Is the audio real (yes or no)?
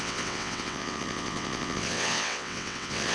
no